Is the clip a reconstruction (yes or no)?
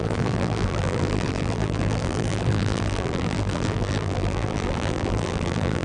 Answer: yes